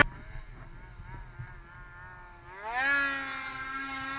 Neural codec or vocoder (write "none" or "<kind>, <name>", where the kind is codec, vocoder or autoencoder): none